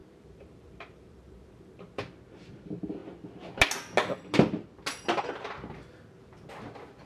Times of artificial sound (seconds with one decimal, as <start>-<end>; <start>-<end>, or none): 0.0-2.0